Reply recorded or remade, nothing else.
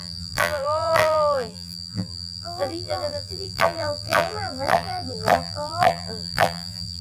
remade